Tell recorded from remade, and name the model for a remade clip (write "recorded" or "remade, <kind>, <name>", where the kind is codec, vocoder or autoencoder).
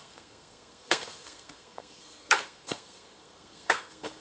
remade, codec, SNAC